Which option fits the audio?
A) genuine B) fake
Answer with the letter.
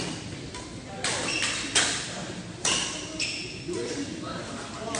A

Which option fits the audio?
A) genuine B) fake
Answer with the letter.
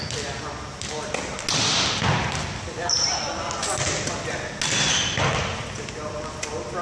A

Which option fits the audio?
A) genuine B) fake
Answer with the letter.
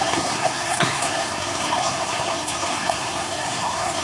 B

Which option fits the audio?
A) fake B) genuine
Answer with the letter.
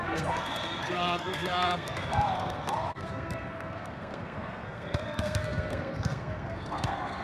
A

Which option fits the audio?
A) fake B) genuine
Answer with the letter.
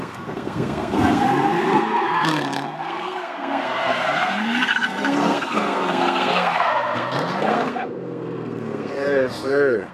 A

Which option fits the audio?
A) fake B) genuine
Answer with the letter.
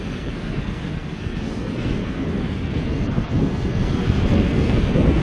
A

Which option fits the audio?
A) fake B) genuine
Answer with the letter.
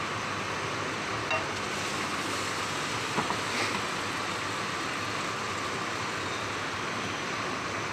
B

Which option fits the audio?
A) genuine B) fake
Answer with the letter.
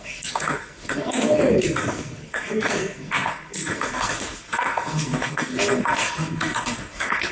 B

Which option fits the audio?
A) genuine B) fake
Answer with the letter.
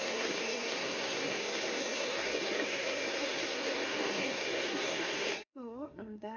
B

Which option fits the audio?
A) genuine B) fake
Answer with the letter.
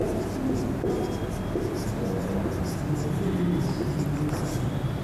A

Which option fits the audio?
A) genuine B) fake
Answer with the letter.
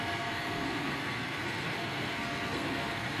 B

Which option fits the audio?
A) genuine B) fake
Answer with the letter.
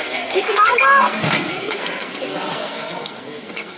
B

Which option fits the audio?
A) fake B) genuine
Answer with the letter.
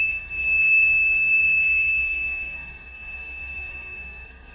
A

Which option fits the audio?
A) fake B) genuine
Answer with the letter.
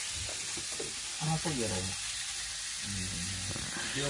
B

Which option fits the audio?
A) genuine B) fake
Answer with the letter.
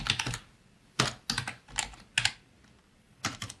A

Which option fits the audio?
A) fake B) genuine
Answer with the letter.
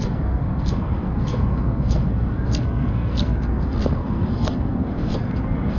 A